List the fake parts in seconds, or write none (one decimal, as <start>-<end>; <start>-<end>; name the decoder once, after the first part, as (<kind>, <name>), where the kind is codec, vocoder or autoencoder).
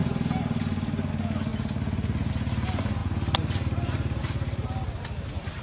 none